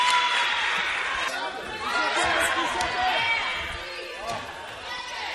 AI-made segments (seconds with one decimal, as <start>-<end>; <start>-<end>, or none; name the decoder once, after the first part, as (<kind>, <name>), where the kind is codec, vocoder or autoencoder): none